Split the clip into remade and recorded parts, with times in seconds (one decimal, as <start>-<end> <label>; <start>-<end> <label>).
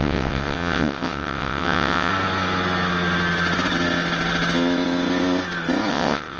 0.0-2.1 remade; 2.1-5.9 recorded; 5.9-6.4 remade